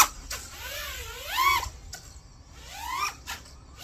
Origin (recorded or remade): recorded